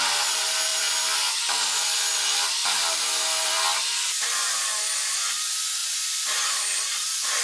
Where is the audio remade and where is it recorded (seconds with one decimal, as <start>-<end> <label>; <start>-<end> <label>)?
0.0-0.7 recorded; 0.7-1.4 remade; 1.4-2.6 recorded; 2.6-4.8 remade; 4.8-5.8 recorded; 5.8-6.8 remade; 6.8-7.4 recorded